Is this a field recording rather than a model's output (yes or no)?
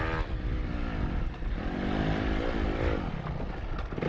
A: yes